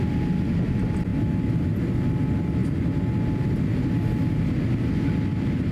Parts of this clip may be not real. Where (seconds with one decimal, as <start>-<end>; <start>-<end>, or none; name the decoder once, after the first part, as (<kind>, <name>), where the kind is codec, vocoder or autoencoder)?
none